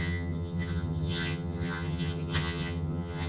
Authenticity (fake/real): fake